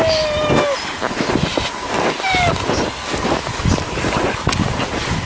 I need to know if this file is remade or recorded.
recorded